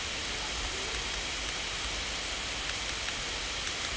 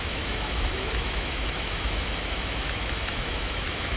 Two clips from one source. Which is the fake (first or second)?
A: second